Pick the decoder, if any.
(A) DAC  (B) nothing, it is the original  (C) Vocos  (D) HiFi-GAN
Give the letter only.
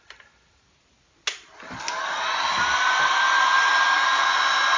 B